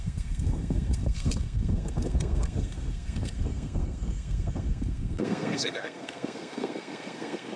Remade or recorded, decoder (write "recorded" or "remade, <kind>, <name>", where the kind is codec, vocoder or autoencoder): remade, codec, SNAC